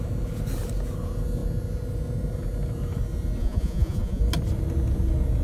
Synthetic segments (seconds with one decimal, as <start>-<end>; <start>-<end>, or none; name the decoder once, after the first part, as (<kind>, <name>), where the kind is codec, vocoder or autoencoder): 3.4-4.2 (vocoder, Vocos)